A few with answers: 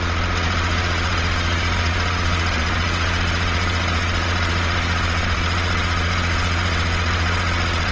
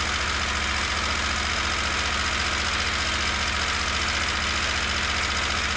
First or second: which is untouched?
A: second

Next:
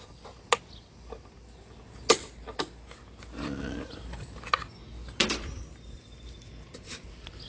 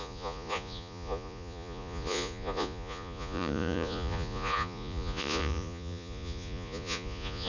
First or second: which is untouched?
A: first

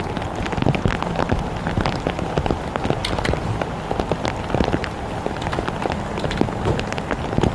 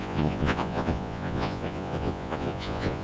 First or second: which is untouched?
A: first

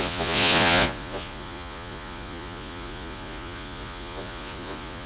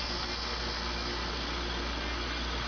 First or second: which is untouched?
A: second